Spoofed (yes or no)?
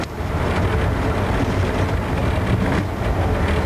no